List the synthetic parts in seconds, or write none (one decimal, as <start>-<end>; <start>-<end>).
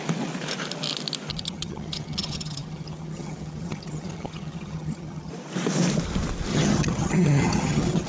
1.3-5.3; 6.5-8.1